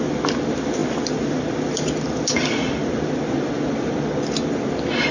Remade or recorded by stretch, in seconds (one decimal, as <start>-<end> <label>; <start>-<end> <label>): 0.0-5.1 recorded